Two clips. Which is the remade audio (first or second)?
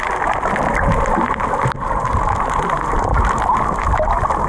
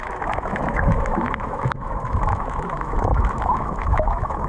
second